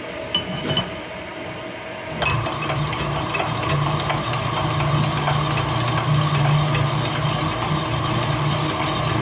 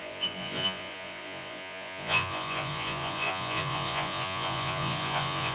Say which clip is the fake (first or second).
second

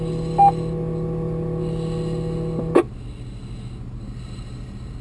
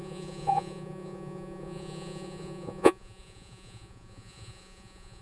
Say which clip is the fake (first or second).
second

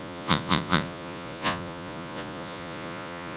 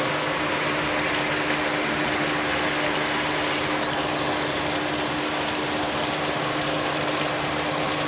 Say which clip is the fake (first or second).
first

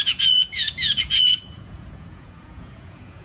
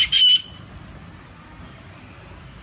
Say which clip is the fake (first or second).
first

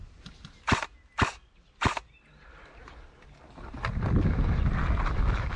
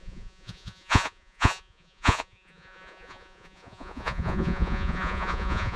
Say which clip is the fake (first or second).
second